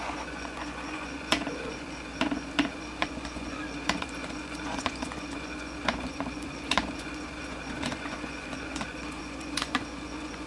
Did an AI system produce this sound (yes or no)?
yes